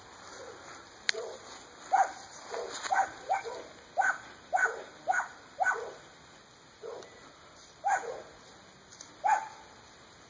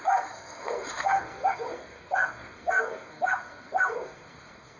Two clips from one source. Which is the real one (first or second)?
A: first